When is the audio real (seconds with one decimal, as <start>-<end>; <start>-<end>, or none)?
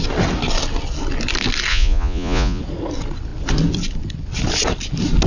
0.0-1.7; 2.6-5.3